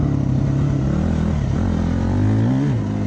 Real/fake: real